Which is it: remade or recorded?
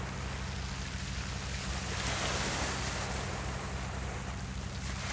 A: recorded